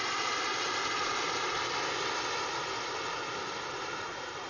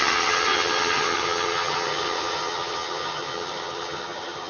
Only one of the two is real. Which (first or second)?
first